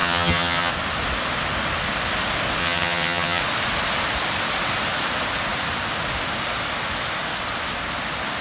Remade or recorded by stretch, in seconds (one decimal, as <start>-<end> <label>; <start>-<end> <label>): 0.0-0.7 remade; 0.7-2.6 recorded; 2.6-3.4 remade; 3.4-8.4 recorded